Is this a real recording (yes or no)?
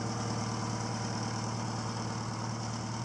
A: no